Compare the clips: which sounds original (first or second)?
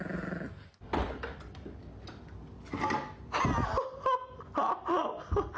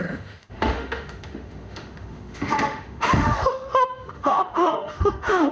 first